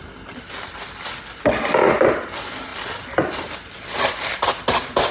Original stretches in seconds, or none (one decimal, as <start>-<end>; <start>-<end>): 0.0-5.1